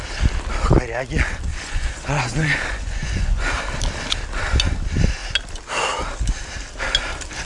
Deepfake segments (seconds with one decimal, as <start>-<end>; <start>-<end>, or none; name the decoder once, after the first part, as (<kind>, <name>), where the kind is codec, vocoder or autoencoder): 1.5-3.5 (vocoder, Vocos)